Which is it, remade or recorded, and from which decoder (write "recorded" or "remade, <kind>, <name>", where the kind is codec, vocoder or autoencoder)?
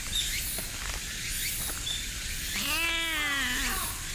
recorded